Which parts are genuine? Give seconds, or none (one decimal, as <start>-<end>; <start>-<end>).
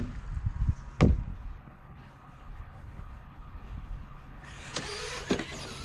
0.0-1.3; 4.8-5.8